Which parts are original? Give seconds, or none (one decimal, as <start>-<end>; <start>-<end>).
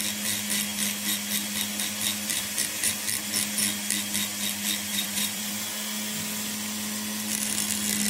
0.0-2.3; 2.9-4.9; 5.5-8.1